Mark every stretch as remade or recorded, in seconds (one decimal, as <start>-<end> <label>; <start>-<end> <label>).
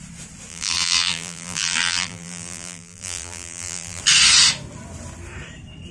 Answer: 0.0-0.5 recorded; 0.5-4.0 remade; 4.0-5.9 recorded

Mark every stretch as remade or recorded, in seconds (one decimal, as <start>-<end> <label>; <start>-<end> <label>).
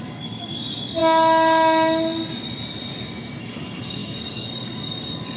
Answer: 0.0-1.0 remade; 1.0-3.4 recorded; 3.4-5.4 remade